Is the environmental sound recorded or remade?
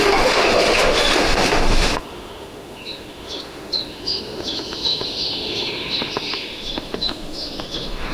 remade